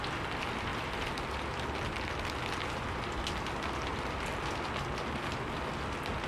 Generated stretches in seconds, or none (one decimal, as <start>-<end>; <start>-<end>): 0.7-1.5